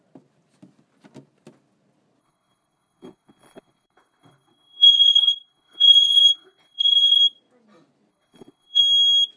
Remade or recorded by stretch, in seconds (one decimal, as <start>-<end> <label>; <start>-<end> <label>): 0.0-2.2 recorded; 2.2-7.2 remade; 7.2-8.1 recorded; 8.1-8.8 remade; 8.8-9.4 recorded